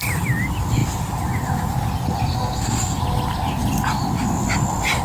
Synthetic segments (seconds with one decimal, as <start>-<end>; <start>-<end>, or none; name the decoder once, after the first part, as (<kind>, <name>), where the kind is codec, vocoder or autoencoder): 2.3-3.0 (codec, SNAC)